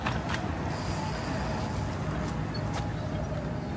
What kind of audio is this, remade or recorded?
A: recorded